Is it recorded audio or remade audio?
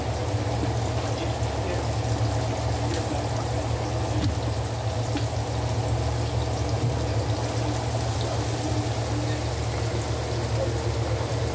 recorded